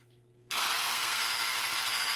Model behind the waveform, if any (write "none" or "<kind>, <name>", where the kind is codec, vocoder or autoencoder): codec, SNAC